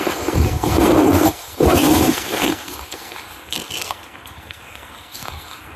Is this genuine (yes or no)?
no